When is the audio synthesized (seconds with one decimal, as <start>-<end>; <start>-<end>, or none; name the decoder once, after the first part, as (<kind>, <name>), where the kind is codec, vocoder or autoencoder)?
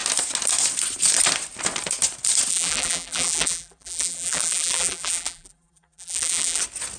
2.5-6.6 (vocoder, BigVGAN v2)